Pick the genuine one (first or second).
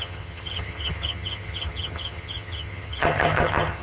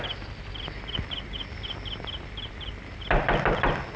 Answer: second